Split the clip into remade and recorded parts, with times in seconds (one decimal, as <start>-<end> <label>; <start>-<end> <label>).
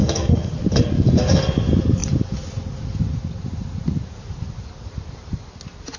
0.0-0.5 remade; 0.5-6.0 recorded